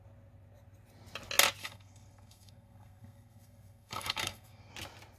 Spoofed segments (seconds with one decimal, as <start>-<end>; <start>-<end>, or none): 1.6-4.7

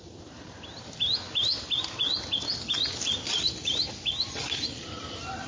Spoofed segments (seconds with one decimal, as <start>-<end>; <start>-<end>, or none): none